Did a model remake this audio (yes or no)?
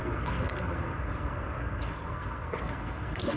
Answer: yes